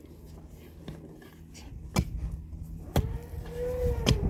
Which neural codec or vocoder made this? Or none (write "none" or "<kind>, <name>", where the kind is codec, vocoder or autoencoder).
none